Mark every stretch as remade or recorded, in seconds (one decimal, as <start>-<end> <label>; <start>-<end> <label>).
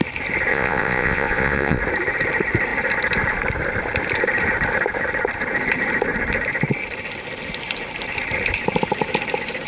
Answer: 0.0-0.5 recorded; 0.5-1.8 remade; 1.8-9.7 recorded